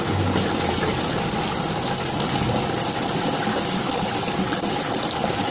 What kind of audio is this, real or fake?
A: real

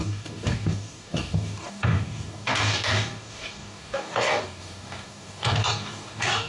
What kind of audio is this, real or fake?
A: fake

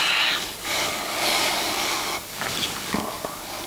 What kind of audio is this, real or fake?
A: fake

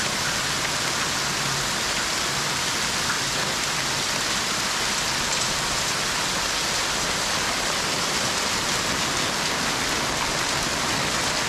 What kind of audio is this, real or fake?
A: real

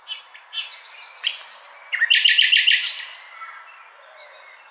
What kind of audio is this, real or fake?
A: real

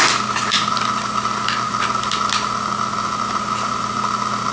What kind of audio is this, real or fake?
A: real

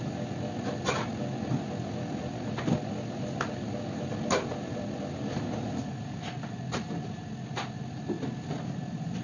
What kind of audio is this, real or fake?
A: real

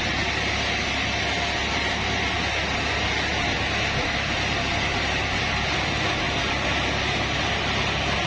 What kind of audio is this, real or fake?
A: real